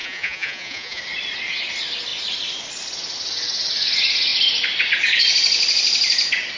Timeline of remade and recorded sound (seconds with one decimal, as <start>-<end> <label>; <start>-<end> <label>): 0.0-1.0 remade; 1.0-6.6 recorded